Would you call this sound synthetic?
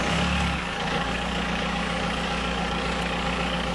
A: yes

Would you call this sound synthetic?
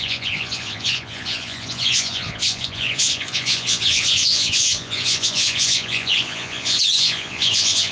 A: yes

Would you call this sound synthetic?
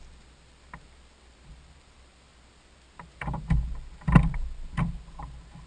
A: no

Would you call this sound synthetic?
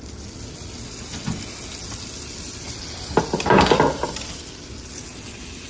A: no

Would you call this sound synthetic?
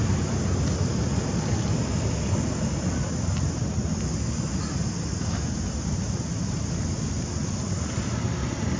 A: no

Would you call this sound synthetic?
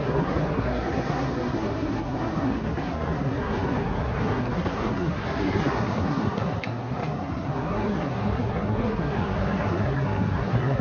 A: yes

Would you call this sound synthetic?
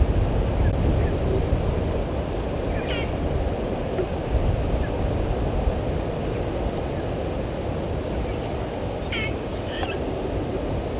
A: no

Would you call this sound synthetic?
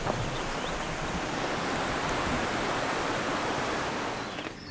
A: no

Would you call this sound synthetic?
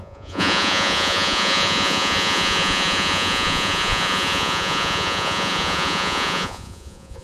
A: yes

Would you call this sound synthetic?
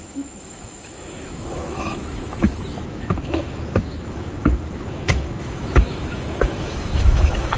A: yes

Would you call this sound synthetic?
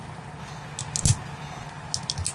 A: no